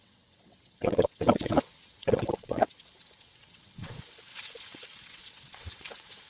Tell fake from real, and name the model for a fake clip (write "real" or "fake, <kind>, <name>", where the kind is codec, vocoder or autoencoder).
fake, vocoder, WaveNeXt